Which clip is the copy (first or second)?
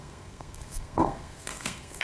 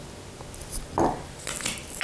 first